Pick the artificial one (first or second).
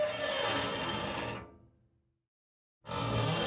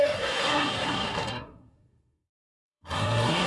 second